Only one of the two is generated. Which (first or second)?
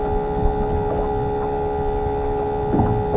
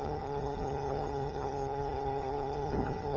second